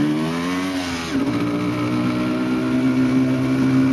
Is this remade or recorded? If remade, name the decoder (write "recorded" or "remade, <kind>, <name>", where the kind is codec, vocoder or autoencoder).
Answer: recorded